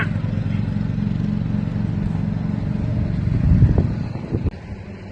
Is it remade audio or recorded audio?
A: recorded